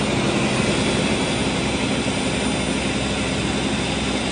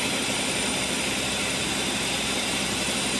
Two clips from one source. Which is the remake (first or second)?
second